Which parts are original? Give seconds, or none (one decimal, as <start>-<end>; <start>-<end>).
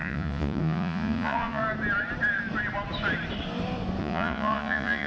1.6-4.0